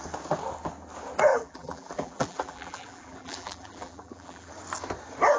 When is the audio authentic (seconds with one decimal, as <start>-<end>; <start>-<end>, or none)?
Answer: 0.0-1.3; 4.5-5.4

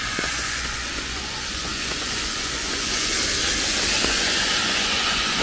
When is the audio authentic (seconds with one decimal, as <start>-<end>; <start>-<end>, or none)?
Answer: 3.1-4.0

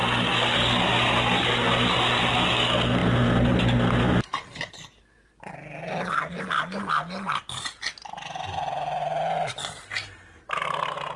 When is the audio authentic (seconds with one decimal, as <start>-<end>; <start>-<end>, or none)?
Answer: 0.0-11.2

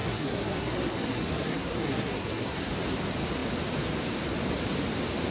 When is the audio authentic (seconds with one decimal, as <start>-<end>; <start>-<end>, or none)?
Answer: 2.7-5.3

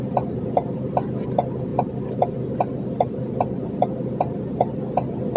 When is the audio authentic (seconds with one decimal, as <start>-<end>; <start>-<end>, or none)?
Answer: 0.0-5.4

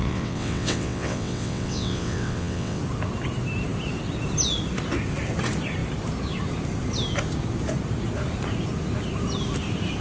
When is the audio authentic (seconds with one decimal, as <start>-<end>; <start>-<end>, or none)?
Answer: 2.8-10.0